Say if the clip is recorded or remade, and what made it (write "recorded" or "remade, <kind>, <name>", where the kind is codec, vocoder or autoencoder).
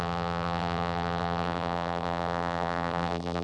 remade, vocoder, BigVGAN v2